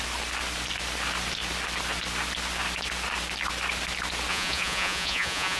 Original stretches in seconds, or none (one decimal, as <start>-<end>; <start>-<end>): 0.0-4.3